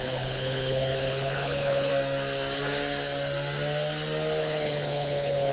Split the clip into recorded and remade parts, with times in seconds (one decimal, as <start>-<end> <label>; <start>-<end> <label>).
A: 0.0-1.9 remade; 1.9-4.4 recorded; 4.4-5.5 remade